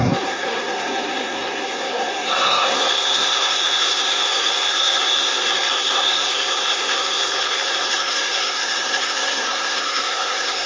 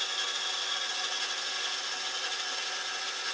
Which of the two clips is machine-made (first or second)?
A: first